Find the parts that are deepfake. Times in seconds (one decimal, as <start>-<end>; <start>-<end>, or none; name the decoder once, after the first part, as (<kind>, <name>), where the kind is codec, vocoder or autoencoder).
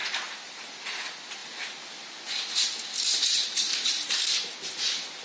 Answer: 0.0-0.6 (vocoder, BigVGAN v2); 3.4-4.6